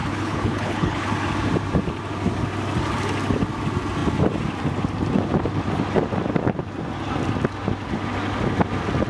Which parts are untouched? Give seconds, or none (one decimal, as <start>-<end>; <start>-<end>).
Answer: 1.1-9.1